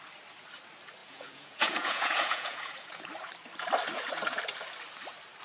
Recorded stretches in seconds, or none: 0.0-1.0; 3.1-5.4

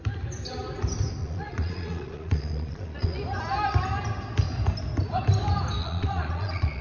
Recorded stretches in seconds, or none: 0.0-1.2; 3.2-5.8